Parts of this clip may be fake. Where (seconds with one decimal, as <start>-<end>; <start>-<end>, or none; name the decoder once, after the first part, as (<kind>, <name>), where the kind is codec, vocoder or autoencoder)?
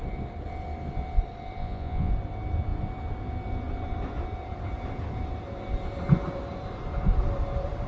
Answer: 1.6-2.1 (vocoder, Vocos)